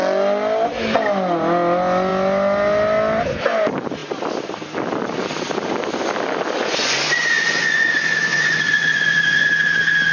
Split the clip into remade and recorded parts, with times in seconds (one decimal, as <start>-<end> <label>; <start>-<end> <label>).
0.0-6.6 recorded; 6.6-9.5 remade; 9.5-10.1 recorded